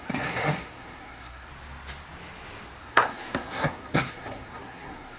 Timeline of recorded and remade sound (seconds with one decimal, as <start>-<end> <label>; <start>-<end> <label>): 0.0-1.5 remade; 1.5-2.8 recorded; 2.8-5.2 remade

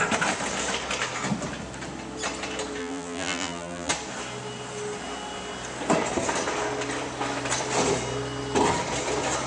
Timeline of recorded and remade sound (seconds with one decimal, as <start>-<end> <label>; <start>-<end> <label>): 0.0-2.8 recorded; 2.8-3.9 remade; 3.9-9.5 recorded

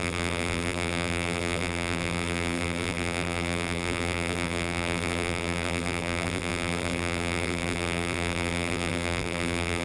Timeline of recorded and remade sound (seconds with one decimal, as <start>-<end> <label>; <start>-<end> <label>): 0.0-9.8 remade